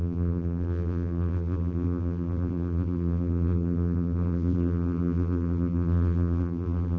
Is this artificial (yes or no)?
yes